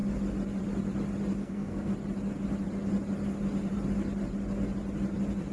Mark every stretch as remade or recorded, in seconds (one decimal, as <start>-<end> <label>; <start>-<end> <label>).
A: 0.0-1.4 recorded; 1.4-1.9 remade; 1.9-5.5 recorded